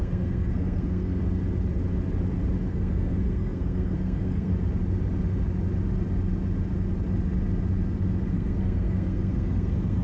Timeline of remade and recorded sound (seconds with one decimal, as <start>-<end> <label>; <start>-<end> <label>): 0.0-1.2 remade; 1.2-2.7 recorded; 2.7-4.5 remade; 4.5-8.3 recorded; 8.3-10.0 remade